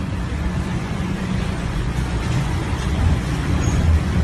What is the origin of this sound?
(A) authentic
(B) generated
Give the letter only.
B